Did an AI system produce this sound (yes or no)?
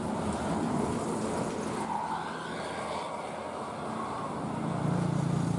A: no